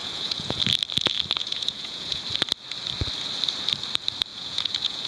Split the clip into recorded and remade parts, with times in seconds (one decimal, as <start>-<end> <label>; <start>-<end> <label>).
0.0-0.6 remade; 0.6-1.4 recorded; 1.4-2.2 remade; 2.2-4.3 recorded; 4.3-5.1 remade